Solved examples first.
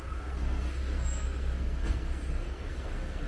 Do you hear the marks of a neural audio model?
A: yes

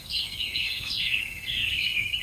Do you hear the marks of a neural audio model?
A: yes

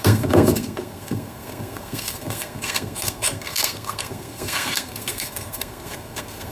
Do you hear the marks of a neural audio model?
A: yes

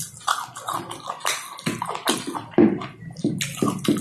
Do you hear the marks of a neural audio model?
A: no